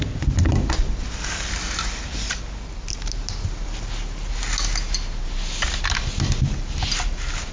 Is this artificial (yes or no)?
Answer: no